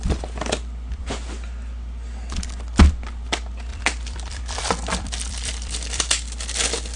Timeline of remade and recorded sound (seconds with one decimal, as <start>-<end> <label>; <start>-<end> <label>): 0.0-3.7 recorded; 3.7-6.0 remade; 6.0-7.0 recorded